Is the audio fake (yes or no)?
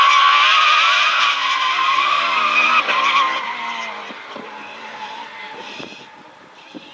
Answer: no